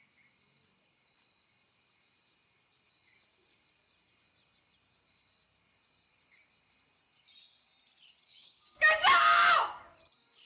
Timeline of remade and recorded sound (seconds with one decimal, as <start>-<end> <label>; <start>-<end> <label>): 0.0-8.3 recorded; 8.3-9.8 remade; 9.8-10.5 recorded